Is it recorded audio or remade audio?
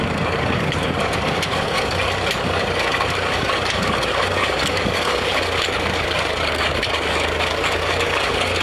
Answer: remade